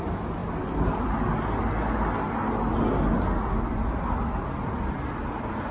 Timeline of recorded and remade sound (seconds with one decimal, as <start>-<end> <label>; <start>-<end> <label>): 0.0-5.7 recorded